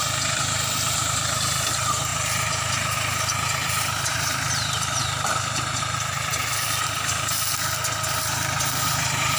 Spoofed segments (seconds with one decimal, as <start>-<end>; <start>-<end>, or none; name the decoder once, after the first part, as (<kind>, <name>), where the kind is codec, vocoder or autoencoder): 0.0-6.4 (vocoder, BigVGAN v2); 8.6-9.4